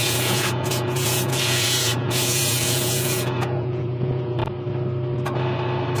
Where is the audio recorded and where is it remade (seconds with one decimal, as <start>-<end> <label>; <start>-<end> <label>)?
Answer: 0.0-4.4 remade; 4.4-6.0 recorded